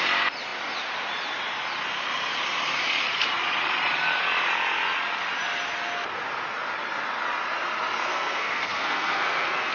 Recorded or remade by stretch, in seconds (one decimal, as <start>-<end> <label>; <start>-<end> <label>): 0.0-8.1 recorded; 8.1-9.7 remade